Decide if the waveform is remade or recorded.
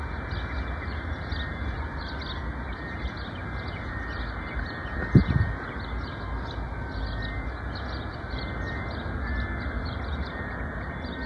recorded